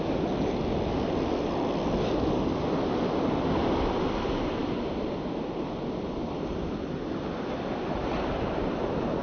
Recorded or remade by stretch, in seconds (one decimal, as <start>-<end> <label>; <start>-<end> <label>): 0.0-9.2 recorded

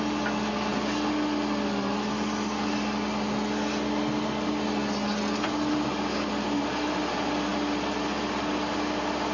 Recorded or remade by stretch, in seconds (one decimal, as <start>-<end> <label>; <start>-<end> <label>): 0.0-9.3 recorded